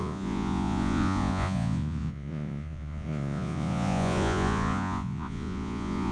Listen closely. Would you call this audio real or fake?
fake